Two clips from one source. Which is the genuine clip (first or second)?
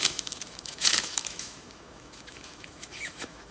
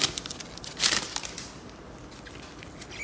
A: second